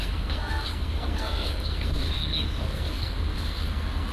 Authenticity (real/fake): fake